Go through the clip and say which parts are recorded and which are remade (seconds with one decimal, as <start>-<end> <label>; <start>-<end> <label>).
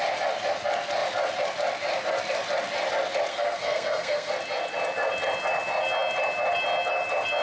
0.0-3.3 recorded; 3.3-4.3 remade; 4.3-7.4 recorded